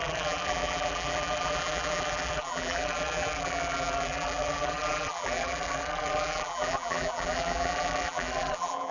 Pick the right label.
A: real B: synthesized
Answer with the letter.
B